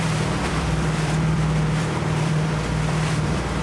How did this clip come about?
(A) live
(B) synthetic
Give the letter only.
B